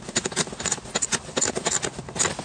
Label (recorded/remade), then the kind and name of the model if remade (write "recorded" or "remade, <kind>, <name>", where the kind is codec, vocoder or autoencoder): recorded